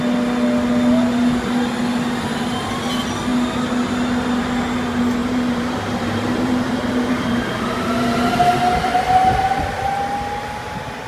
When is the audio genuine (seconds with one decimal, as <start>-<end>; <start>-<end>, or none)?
0.0-5.2; 8.3-11.1